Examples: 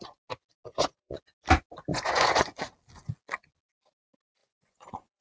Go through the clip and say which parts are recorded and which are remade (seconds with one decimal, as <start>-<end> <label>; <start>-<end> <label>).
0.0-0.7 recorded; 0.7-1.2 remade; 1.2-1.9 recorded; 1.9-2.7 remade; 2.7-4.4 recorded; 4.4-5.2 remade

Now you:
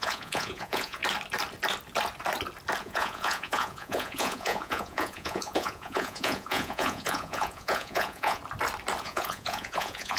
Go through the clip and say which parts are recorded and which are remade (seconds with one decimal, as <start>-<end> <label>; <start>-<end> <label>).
0.0-1.0 remade; 1.0-2.8 recorded; 2.8-8.4 remade; 8.4-9.0 recorded; 9.0-10.2 remade

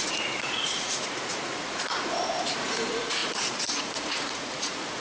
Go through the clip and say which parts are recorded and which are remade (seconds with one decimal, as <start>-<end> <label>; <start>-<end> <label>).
0.0-5.0 remade

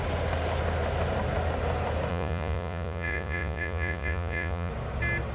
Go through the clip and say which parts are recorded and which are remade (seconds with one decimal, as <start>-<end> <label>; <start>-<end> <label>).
0.0-2.1 recorded; 2.1-4.7 remade; 4.7-5.3 recorded